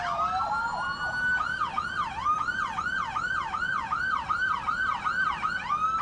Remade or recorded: recorded